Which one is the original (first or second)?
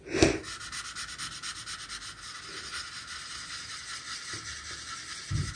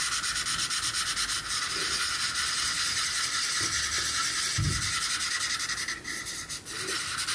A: first